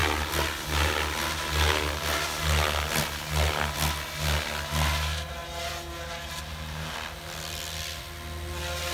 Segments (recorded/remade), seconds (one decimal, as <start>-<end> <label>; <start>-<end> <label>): 0.0-8.9 recorded